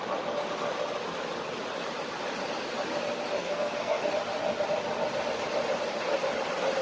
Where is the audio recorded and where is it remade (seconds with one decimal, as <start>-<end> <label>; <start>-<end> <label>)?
0.0-3.4 recorded; 3.4-4.1 remade; 4.1-6.8 recorded